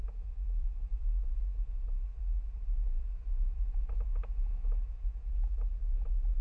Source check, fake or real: fake